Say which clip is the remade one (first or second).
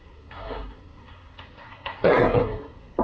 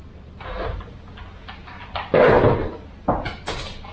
first